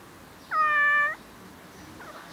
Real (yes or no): yes